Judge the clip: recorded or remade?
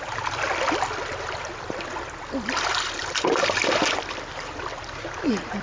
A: remade